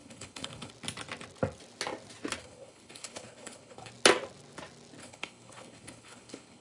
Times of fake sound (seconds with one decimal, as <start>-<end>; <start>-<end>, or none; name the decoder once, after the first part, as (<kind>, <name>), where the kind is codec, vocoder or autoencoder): 0.0-0.7 (codec, HILCodec); 2.4-3.9; 5.0-6.6